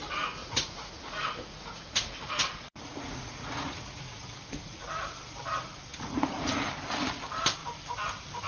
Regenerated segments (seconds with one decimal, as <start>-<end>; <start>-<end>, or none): 0.4-4.8; 5.9-6.7